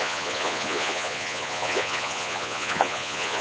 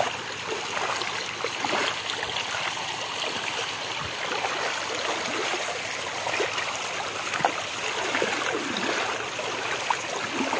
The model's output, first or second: first